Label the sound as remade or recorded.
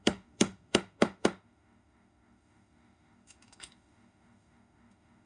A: remade